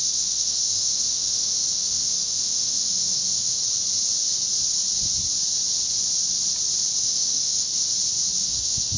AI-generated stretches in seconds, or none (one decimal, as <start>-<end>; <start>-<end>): 0.0-3.6; 7.0-7.7; 8.4-9.0

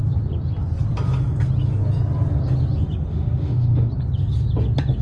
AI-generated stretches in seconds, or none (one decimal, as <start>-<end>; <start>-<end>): 3.1-3.9

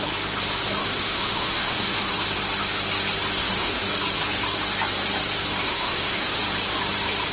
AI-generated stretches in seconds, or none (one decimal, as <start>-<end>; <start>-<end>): 0.8-2.1; 3.4-3.9; 5.6-6.4

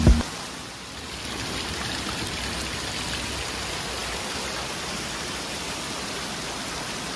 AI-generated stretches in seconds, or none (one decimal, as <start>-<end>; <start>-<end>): none

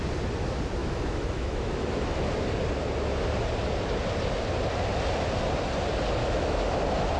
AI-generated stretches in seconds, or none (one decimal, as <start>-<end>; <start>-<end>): 0.8-2.3; 6.2-6.8

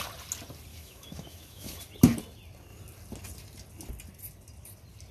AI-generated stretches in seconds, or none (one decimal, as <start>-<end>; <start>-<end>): 0.7-1.8